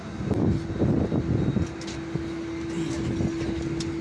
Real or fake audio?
real